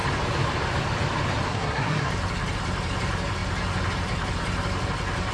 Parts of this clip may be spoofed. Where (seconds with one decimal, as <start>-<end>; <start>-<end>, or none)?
1.5-2.1